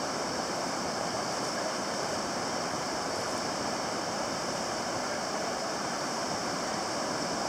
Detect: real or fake fake